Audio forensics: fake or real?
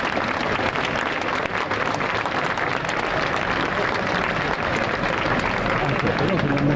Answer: real